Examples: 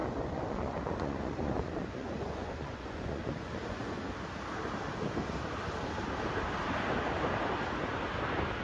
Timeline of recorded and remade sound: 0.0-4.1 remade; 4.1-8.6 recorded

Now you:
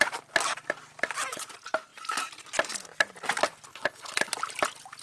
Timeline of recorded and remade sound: 0.0-3.7 recorded; 3.7-4.3 remade; 4.3-5.0 recorded

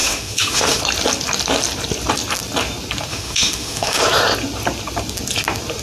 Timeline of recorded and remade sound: 0.0-0.8 remade; 0.8-3.1 recorded; 3.1-4.0 remade; 4.0-5.8 recorded

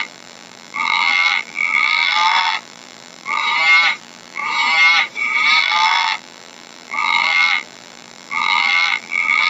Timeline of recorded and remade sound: 0.0-3.4 remade; 3.4-4.0 recorded; 4.0-4.4 remade; 4.4-5.6 recorded; 5.6-9.5 remade

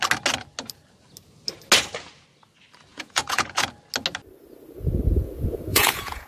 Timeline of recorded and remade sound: 0.0-2.9 recorded; 2.9-3.7 remade; 3.7-5.7 recorded; 5.7-6.3 remade

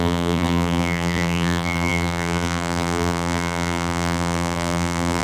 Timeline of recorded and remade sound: 0.0-5.2 remade

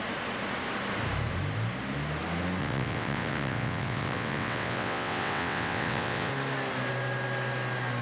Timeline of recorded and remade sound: 0.0-2.6 recorded; 2.6-6.3 remade; 6.3-8.0 recorded